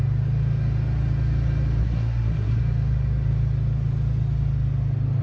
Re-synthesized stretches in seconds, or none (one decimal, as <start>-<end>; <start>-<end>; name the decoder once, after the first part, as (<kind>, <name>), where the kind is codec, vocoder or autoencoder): 1.8-2.6 (codec, SNAC)